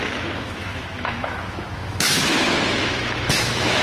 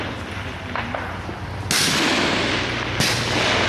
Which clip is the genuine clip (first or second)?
second